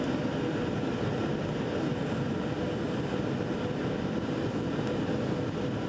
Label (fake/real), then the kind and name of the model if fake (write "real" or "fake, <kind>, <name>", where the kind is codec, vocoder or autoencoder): real